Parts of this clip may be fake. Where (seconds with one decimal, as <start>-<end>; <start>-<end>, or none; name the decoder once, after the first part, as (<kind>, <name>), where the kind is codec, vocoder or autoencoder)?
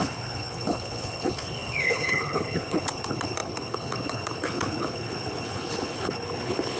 0.0-6.8 (codec, HILCodec)